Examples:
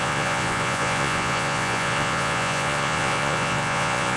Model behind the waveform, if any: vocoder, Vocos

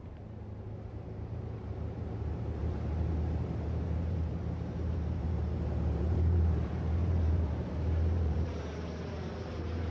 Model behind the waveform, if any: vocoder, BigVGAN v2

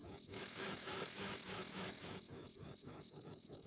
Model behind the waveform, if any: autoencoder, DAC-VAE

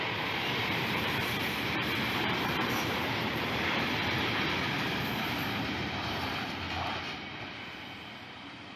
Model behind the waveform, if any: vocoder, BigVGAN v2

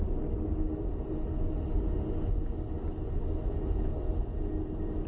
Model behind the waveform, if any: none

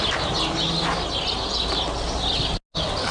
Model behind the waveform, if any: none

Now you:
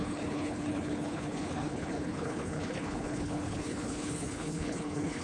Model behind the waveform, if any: codec, HILCodec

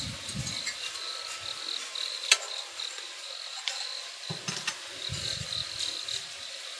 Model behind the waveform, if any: none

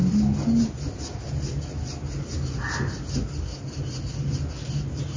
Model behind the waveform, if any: none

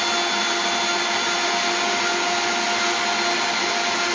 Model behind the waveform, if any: none